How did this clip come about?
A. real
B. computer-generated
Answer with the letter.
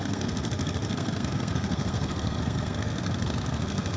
B